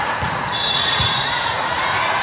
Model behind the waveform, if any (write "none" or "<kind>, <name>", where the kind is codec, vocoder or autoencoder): vocoder, Vocos